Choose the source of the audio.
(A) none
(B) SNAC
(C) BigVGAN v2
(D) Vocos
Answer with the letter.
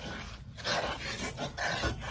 A